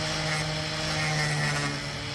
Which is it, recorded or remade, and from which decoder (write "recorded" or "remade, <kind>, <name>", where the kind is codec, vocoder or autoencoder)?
recorded